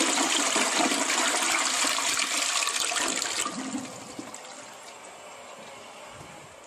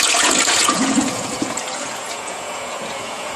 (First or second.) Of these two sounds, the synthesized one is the second